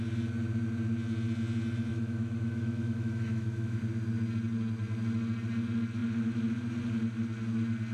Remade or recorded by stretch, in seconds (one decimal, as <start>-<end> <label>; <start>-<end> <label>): 0.0-1.9 recorded; 1.9-3.8 remade; 3.8-7.9 recorded